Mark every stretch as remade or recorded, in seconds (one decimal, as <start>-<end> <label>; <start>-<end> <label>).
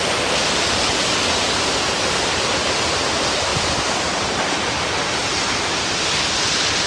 0.0-6.9 recorded